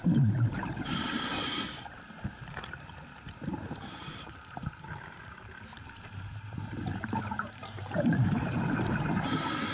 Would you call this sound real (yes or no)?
no